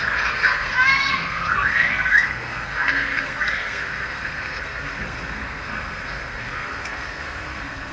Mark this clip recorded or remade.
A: remade